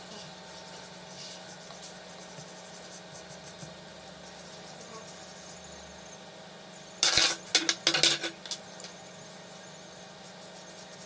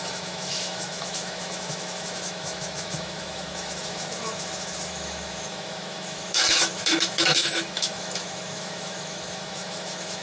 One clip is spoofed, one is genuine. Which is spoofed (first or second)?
second